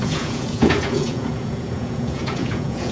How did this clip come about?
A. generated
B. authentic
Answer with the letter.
A